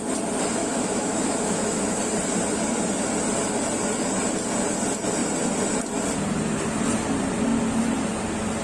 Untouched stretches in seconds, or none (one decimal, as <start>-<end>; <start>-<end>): 0.0-0.6; 2.0-8.6